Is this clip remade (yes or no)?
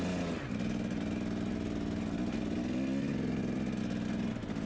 no